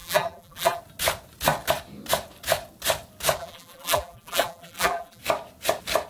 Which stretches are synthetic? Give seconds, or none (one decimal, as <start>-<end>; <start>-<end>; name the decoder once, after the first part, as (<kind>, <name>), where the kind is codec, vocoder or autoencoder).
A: 0.0-0.8 (vocoder, BigVGAN v2); 3.4-5.2